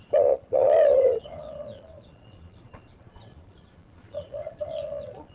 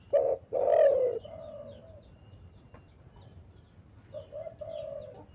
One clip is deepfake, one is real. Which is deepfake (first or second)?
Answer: first